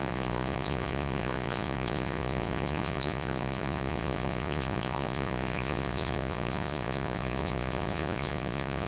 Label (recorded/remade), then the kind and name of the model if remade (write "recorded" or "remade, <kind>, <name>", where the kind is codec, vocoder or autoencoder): remade, vocoder, Vocos